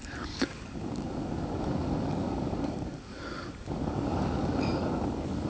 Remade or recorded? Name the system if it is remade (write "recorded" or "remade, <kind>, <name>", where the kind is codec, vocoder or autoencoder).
remade, codec, DAC